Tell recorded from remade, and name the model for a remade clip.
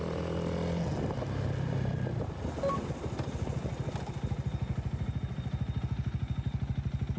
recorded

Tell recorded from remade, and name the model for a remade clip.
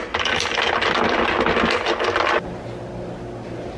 recorded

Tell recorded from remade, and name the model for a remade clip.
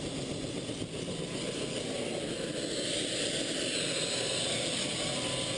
recorded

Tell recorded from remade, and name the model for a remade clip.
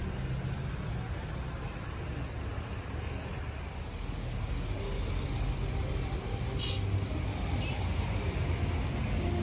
recorded